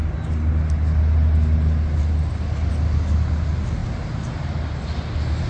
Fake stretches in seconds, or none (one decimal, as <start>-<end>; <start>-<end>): none